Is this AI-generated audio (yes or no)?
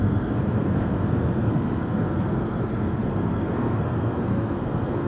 yes